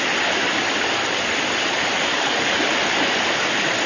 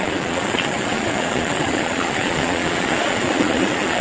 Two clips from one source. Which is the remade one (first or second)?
second